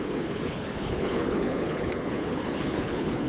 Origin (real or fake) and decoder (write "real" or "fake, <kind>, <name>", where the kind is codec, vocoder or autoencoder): fake, codec, HILCodec